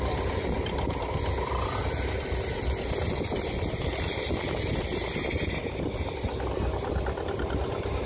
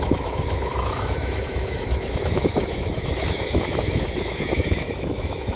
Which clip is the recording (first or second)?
first